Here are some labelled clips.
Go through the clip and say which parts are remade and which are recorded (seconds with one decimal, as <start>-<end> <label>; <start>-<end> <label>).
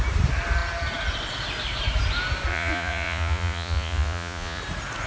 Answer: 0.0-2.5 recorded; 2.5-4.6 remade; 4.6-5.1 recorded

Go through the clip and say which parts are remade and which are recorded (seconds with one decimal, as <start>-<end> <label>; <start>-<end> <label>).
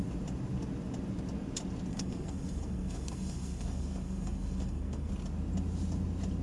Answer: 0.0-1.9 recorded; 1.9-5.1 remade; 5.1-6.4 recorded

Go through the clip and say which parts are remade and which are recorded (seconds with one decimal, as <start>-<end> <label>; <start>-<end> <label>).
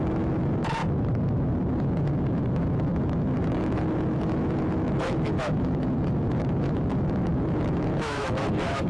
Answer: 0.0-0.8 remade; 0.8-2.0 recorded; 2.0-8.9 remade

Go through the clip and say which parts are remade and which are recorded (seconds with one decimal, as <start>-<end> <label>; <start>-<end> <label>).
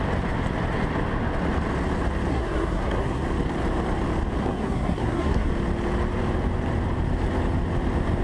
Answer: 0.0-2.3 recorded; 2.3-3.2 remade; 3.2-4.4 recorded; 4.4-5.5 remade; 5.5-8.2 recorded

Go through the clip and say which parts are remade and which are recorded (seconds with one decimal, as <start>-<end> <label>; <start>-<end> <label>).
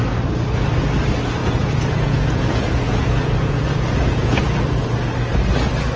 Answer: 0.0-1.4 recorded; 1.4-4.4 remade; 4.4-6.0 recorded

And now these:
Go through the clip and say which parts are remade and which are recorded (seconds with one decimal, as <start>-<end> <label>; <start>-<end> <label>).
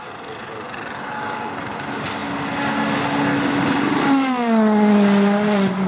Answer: 0.0-5.9 recorded